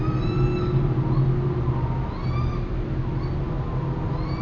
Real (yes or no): yes